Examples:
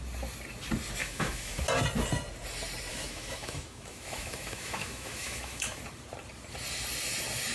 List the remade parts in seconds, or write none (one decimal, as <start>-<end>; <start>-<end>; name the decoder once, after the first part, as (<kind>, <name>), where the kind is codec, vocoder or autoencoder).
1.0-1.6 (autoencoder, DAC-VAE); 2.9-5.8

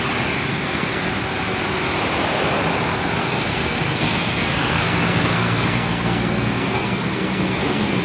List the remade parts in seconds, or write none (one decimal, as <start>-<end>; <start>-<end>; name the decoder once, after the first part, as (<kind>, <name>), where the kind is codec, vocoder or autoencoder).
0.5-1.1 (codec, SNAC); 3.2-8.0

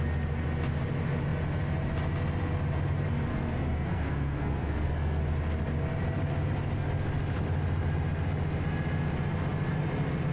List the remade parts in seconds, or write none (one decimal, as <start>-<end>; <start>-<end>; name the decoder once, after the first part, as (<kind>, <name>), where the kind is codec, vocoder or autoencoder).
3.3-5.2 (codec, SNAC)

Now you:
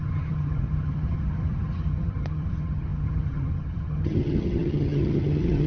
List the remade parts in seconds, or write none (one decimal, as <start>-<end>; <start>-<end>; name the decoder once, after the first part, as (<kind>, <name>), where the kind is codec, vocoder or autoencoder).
0.0-5.7 (vocoder, HiFi-GAN)